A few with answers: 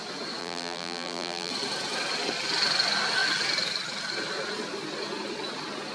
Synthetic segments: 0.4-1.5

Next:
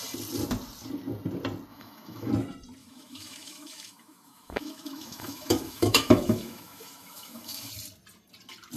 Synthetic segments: 1.7-2.3; 2.8-7.7

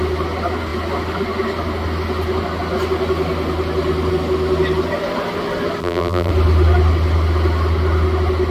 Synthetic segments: 5.8-6.3